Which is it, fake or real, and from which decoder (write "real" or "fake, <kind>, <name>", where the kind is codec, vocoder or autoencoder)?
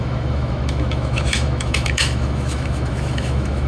fake, autoencoder, DAC-VAE